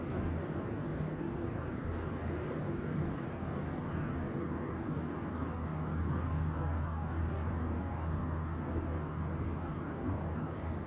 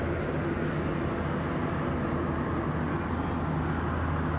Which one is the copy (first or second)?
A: first